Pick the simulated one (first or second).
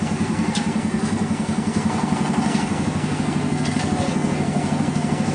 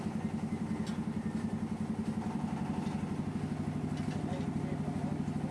first